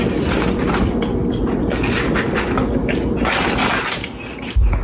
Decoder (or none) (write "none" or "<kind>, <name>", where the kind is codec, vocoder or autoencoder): none